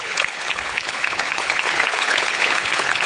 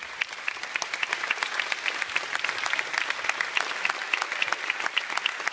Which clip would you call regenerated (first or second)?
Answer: first